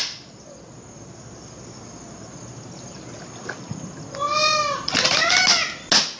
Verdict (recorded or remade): recorded